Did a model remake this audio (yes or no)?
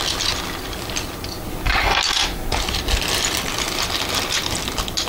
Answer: no